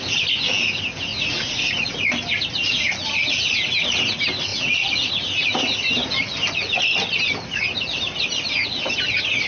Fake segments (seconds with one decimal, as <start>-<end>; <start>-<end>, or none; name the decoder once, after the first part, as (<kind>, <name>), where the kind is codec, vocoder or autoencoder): 1.1-2.0 (vocoder, Vocos); 4.5-5.1